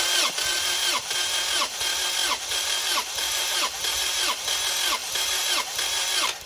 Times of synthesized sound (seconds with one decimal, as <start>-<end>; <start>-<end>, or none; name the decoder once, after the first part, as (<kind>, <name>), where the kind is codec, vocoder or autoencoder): 0.5-1.0 (vocoder, BigVGAN v2); 2.2-4.4; 5.0-5.5